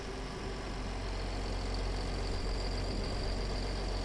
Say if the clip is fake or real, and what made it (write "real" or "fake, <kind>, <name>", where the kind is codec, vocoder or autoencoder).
real